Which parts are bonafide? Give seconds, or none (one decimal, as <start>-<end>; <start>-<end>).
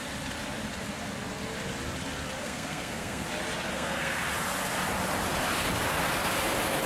0.0-2.4; 3.3-3.7; 4.2-6.9